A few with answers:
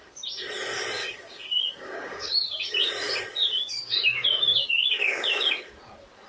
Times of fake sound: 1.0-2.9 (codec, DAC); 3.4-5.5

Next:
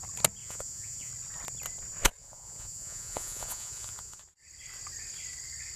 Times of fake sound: 0.4-1.1 (vocoder, Vocos); 2.2-4.2